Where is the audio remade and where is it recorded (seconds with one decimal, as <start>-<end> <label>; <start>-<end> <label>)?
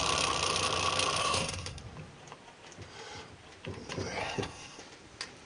0.0-1.2 recorded; 1.2-1.8 remade; 1.8-4.2 recorded; 4.2-4.8 remade; 4.8-5.5 recorded